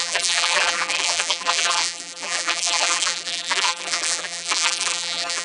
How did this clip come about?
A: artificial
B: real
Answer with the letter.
A